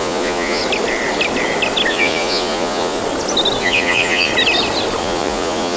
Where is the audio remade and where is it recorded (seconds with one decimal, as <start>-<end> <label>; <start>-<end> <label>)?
0.0-0.6 remade; 0.6-1.9 recorded; 1.9-3.0 remade; 3.0-3.6 recorded; 3.6-4.3 remade; 4.3-5.0 recorded; 5.0-5.8 remade